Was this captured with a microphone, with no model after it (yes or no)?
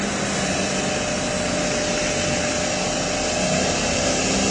yes